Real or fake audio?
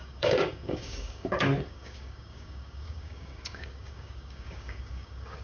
fake